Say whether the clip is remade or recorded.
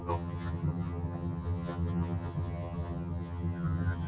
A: remade